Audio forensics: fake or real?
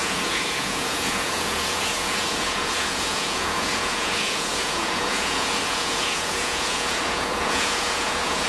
fake